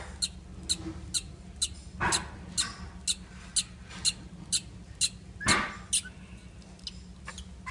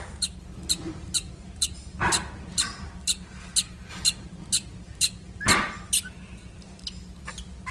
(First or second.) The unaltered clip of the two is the first